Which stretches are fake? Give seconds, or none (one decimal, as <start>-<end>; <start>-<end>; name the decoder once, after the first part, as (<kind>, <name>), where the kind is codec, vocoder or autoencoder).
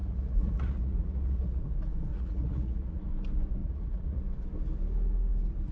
0.0-1.6 (vocoder, Vocos); 2.1-3.0; 3.6-4.2